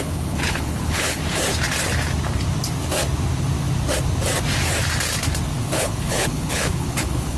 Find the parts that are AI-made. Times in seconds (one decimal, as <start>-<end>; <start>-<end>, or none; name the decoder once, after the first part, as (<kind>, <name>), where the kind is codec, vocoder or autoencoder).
0.0-1.2 (codec, HILCodec); 5.6-7.4